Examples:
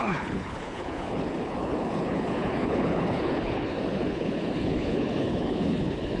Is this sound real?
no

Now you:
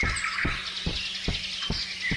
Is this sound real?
yes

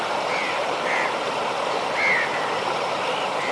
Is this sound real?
yes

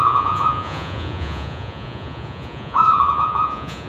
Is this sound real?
no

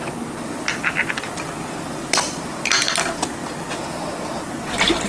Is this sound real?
yes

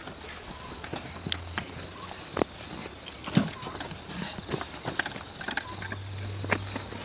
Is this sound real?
yes